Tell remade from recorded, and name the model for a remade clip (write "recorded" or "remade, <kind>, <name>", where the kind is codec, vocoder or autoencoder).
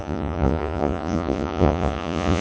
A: remade, vocoder, Vocos